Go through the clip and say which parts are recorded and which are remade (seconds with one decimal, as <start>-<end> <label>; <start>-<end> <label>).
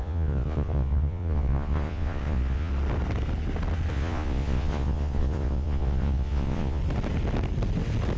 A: 0.0-2.7 remade; 2.7-3.9 recorded; 3.9-6.8 remade; 6.8-8.2 recorded